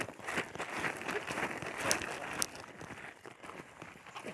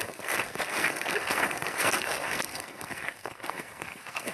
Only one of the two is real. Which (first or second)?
first